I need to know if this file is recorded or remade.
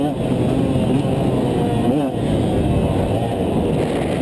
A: recorded